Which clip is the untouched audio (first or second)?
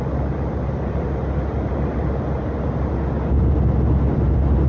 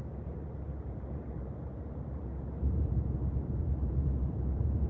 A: first